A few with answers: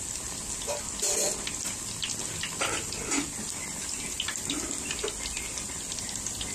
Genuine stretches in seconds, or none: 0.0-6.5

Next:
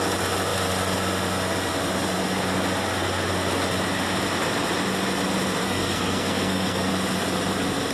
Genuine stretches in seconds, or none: 0.0-5.6; 6.9-7.9

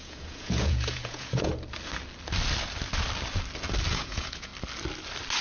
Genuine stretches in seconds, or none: 1.5-3.9; 4.5-5.4

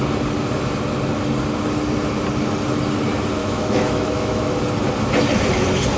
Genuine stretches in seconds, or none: 0.0-3.4; 4.6-6.0